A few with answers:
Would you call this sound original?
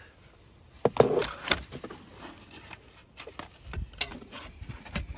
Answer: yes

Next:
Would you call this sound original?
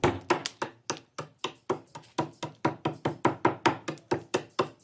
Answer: yes